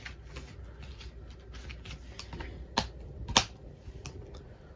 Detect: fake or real real